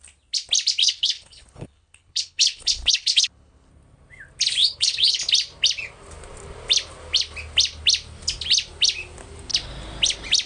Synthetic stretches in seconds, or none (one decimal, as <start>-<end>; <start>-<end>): 0.8-3.7; 4.6-5.2